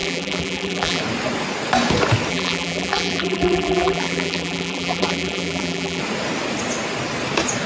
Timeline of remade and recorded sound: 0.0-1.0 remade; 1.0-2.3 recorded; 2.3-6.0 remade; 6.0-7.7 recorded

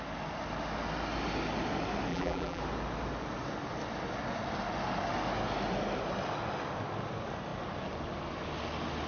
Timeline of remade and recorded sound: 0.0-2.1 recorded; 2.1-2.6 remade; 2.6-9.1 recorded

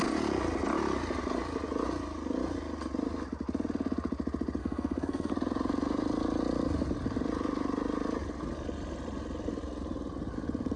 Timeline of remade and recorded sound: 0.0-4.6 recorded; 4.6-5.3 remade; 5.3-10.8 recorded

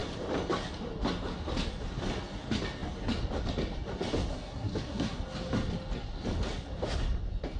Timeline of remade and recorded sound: 0.0-4.3 recorded; 4.3-5.2 remade; 5.2-7.6 recorded

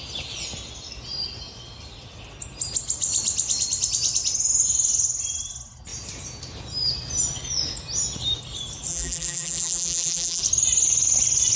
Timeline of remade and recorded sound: 0.0-8.9 recorded; 8.9-10.4 remade; 10.4-11.6 recorded

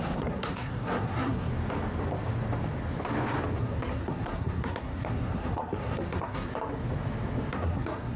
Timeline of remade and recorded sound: 0.0-1.5 remade; 1.5-3.6 recorded; 3.6-6.5 remade; 6.5-7.5 recorded; 7.5-8.2 remade